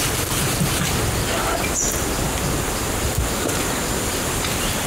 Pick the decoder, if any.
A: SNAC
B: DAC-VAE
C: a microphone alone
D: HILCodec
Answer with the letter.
C